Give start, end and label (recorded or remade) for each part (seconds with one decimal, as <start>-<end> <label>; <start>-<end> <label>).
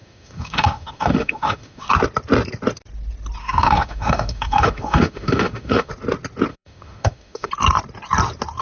0.0-1.9 remade; 1.9-3.4 recorded; 3.4-5.9 remade; 5.9-6.5 recorded; 6.5-7.5 remade; 7.5-8.6 recorded